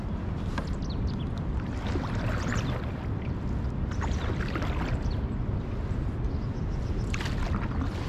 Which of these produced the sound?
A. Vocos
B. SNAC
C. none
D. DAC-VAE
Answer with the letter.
C